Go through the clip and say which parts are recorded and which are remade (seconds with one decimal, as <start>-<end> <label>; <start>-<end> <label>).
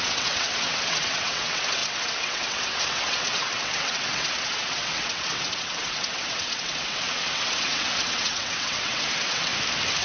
0.0-9.5 remade; 9.5-10.0 recorded